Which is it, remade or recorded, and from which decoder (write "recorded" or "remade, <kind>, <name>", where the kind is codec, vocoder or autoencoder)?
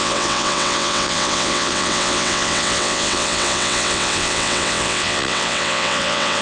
remade, vocoder, WaveNeXt